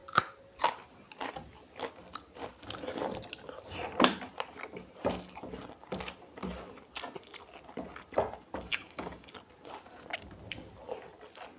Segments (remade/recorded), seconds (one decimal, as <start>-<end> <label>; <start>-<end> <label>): 0.0-8.7 recorded; 8.7-9.3 remade; 9.3-11.6 recorded